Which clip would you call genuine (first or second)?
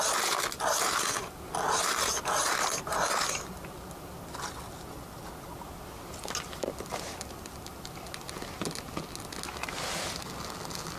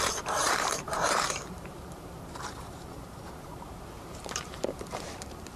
first